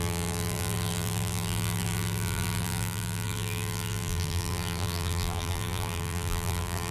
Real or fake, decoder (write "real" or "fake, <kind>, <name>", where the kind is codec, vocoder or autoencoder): fake, vocoder, BigVGAN v2